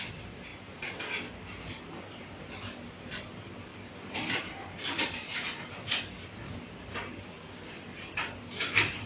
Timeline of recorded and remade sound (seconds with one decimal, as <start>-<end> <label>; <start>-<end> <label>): 0.0-9.1 recorded